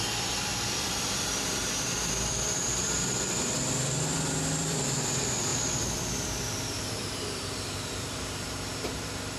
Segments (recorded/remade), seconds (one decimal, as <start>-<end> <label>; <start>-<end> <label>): 0.0-9.4 remade